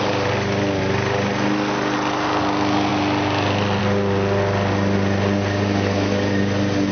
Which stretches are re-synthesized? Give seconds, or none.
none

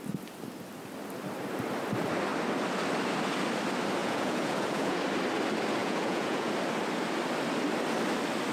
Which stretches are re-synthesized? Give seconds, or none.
4.0-5.0; 5.8-6.5

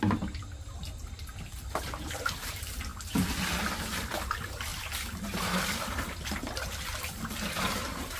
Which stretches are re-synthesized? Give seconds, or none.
0.0-2.9; 3.4-4.7; 5.6-8.2

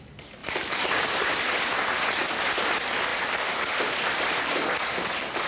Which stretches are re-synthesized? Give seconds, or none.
0.4-1.0; 3.1-4.4

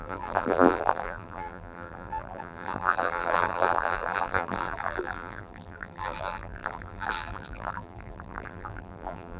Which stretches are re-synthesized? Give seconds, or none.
0.0-9.4

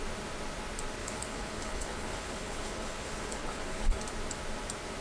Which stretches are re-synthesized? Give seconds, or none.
1.0-4.0

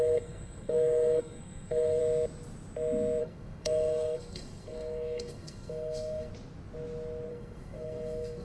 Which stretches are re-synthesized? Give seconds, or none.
0.0-2.0; 3.2-6.3; 7.3-8.4

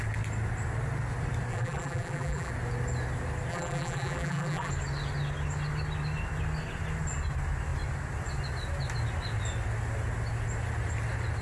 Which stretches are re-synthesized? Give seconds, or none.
1.5-2.5; 3.5-4.7